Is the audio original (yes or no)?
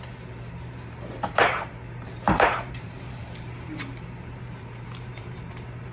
no